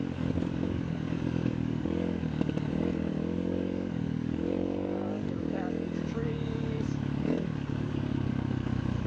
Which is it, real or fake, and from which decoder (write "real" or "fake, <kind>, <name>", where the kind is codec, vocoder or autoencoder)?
fake, codec, DAC